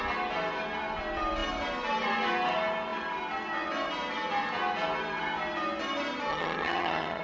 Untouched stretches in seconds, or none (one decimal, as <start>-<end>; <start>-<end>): 0.0-6.3